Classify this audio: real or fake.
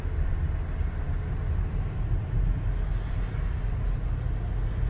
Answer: real